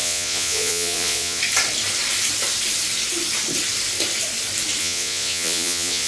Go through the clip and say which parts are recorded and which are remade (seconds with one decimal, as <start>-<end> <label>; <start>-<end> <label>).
0.0-1.4 remade; 1.4-4.8 recorded; 4.8-6.1 remade